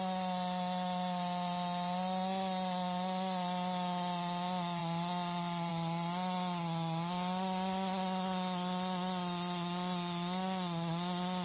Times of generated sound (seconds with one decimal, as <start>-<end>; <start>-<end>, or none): none